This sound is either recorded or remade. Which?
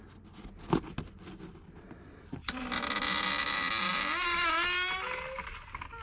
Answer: recorded